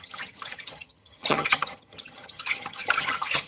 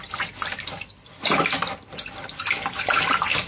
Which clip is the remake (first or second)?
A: first